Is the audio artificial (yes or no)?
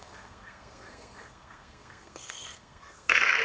yes